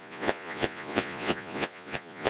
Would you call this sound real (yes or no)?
no